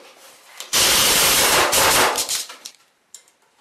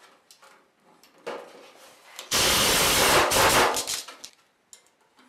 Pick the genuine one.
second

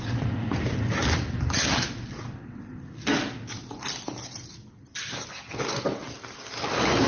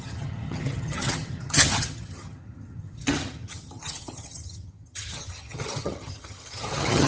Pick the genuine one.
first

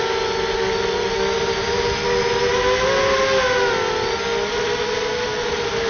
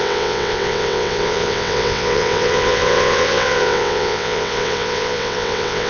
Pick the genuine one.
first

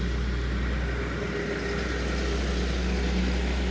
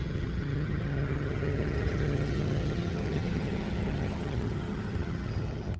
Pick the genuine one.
first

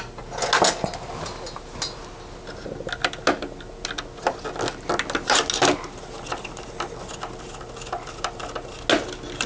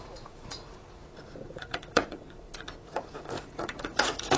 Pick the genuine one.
first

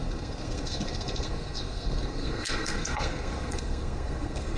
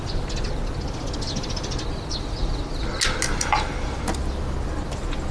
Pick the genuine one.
second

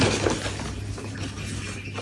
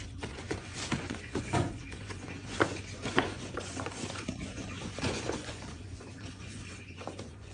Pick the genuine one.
first